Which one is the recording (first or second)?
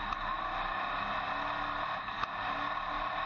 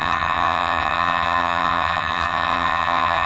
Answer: first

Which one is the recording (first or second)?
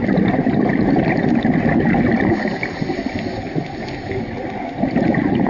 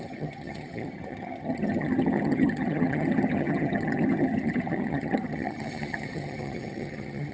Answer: first